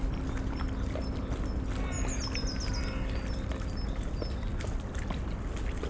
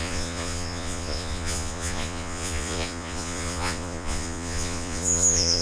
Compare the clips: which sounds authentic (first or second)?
first